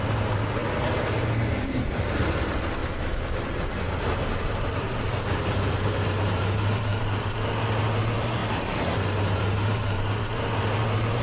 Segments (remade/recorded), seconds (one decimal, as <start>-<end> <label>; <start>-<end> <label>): 0.0-0.6 remade; 0.6-1.9 recorded; 1.9-2.8 remade; 2.8-3.4 recorded; 3.4-11.2 remade